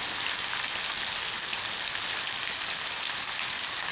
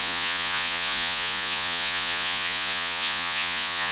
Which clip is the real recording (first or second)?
first